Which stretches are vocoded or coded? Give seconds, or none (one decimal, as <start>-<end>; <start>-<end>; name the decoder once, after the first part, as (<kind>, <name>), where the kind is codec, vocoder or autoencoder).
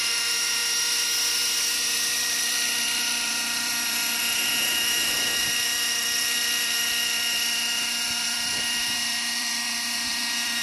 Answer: 0.0-0.6 (vocoder, BigVGAN v2); 1.7-10.6